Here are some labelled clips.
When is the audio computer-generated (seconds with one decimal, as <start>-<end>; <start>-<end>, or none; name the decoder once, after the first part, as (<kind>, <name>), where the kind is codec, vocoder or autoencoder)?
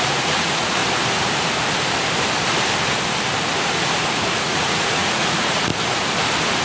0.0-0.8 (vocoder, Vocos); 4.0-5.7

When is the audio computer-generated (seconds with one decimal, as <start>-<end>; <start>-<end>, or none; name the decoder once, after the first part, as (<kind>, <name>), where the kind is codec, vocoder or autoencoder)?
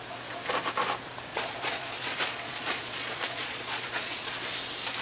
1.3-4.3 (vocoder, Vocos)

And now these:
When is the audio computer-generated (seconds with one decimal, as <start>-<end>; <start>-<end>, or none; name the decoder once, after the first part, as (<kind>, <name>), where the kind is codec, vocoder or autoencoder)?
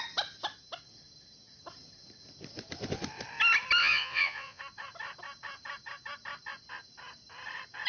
3.8-4.6 (vocoder, Vocos)